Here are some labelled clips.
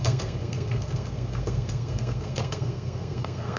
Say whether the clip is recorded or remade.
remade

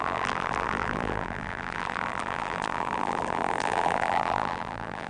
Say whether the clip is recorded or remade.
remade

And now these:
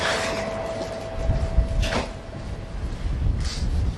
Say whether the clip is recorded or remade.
recorded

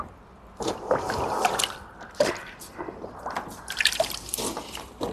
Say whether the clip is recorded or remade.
remade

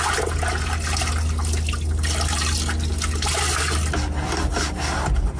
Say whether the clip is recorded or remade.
recorded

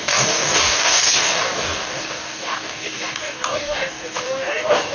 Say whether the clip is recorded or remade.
remade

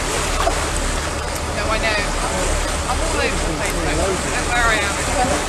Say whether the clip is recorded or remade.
recorded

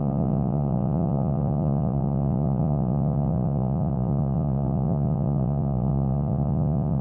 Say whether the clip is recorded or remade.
remade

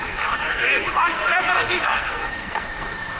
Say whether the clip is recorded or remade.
remade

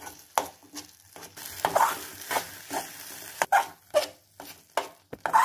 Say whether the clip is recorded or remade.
recorded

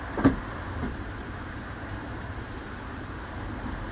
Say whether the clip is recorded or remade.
remade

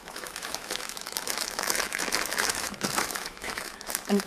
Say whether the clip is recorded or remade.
remade